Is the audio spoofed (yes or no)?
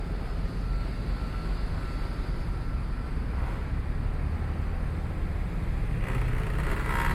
no